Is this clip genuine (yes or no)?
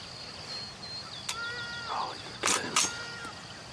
yes